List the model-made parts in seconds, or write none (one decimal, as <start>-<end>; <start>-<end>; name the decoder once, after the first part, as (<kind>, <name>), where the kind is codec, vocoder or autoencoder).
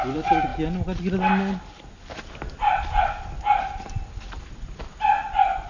none